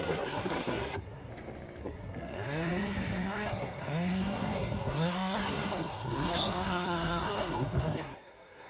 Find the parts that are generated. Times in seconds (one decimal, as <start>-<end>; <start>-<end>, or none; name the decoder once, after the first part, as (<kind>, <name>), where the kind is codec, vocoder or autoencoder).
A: 0.0-1.3 (codec, SNAC); 1.8-8.7